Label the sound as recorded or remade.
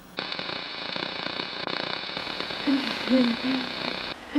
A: remade